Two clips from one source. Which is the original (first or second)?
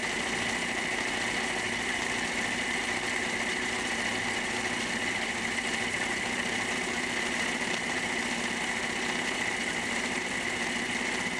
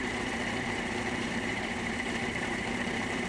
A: first